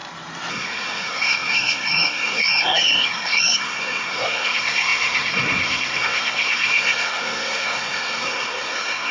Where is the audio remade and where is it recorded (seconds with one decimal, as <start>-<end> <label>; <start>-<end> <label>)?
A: 0.0-0.5 recorded; 0.5-9.1 remade